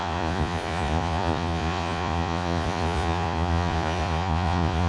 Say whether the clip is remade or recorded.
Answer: remade